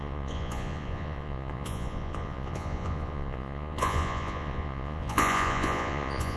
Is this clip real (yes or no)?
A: no